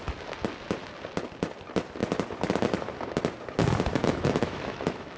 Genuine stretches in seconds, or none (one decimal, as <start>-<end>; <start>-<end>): 0.0-4.0